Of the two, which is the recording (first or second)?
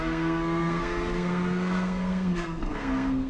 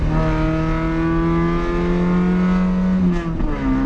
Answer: second